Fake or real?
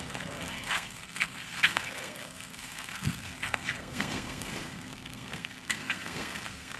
fake